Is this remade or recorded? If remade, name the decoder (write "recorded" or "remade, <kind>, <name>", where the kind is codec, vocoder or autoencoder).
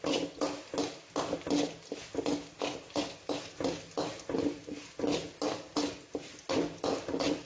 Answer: recorded